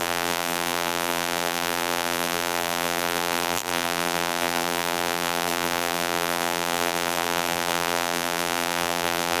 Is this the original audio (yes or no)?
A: no